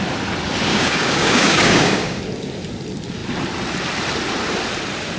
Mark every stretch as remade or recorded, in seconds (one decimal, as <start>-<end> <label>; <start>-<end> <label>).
0.0-0.7 recorded; 0.7-2.2 remade; 2.2-5.2 recorded